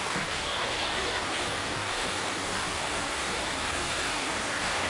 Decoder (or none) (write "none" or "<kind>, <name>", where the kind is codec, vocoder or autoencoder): codec, DAC